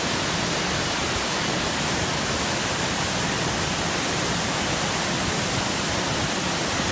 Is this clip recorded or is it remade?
recorded